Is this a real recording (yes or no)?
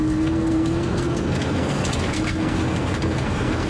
no